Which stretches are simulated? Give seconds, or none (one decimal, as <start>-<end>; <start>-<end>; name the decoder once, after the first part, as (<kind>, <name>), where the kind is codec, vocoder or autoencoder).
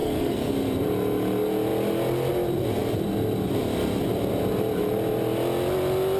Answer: 0.0-0.5 (codec, SNAC)